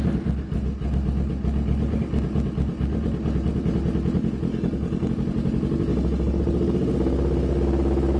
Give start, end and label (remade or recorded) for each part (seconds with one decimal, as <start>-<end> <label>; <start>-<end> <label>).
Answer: 0.0-4.5 recorded; 4.5-5.1 remade; 5.1-5.9 recorded; 5.9-6.4 remade; 6.4-8.2 recorded